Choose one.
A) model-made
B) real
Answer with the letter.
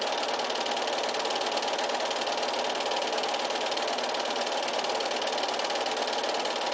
B